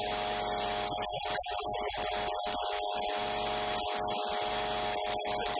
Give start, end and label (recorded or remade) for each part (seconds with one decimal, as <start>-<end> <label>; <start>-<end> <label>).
0.0-5.6 recorded